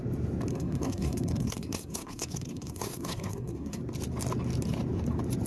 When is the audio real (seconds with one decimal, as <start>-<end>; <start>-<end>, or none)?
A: 0.0-0.5; 3.8-5.5